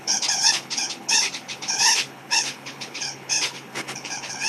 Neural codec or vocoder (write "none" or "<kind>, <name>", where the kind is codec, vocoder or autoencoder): codec, HILCodec